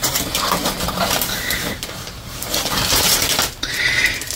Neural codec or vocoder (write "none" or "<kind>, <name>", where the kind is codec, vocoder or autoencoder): vocoder, BigVGAN v2